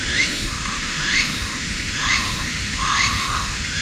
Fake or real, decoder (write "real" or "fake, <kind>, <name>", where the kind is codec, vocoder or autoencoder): fake, autoencoder, DAC-VAE